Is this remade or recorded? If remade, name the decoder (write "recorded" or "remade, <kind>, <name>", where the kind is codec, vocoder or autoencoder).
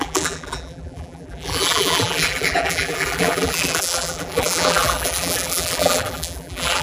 remade, vocoder, BigVGAN v2